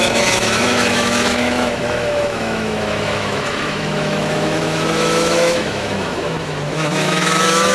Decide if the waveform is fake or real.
fake